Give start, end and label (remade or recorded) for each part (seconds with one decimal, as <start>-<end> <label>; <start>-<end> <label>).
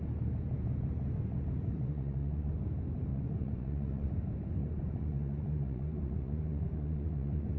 0.0-1.7 recorded; 1.7-2.5 remade; 2.5-3.1 recorded; 3.1-4.1 remade; 4.1-4.6 recorded; 4.6-7.6 remade